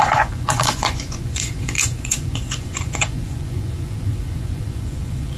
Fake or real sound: fake